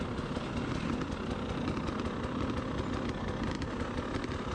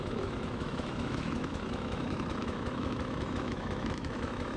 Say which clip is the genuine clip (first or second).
first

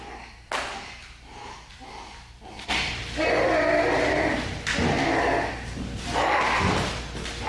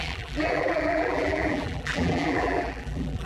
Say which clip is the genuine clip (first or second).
first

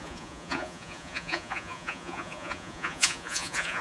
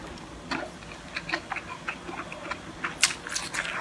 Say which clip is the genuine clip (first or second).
second